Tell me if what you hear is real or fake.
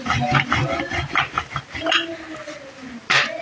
real